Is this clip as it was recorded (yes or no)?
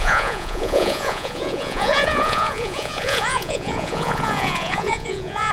no